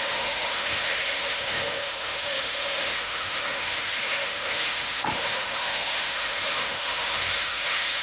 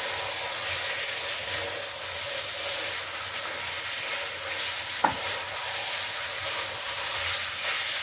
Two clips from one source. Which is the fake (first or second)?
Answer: first